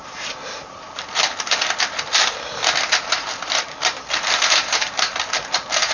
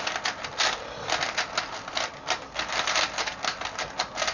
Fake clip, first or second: first